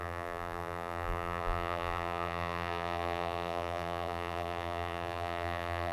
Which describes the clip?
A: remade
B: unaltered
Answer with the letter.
A